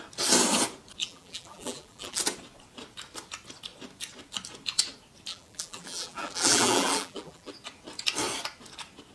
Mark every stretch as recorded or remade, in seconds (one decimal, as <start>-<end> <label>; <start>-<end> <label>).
0.0-1.0 recorded; 1.0-2.2 remade; 2.2-5.3 recorded; 5.3-7.5 remade; 7.5-9.1 recorded